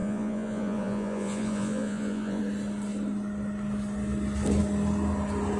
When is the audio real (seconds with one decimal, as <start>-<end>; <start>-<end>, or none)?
2.4-5.6